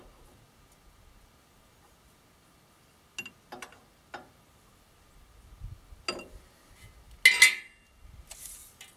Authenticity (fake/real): real